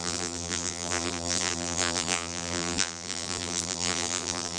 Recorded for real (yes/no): no